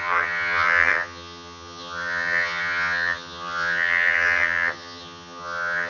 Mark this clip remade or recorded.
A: remade